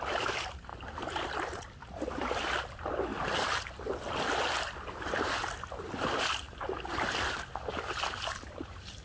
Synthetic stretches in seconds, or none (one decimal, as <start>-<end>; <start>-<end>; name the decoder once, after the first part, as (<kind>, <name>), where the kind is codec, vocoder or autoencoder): none